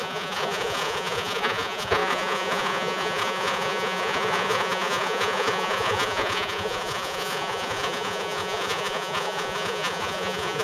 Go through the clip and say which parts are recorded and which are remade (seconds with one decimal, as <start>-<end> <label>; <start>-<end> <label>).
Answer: 0.0-10.6 remade